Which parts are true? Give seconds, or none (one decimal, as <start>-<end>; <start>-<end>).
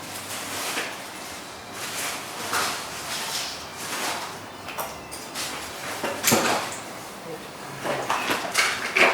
0.0-3.7; 4.5-5.8; 7.5-9.1